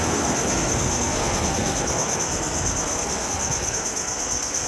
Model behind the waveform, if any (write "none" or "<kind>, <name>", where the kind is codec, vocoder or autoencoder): codec, SNAC